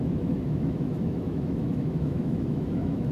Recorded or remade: remade